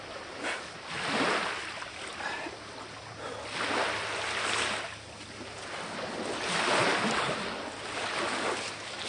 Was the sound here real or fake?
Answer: real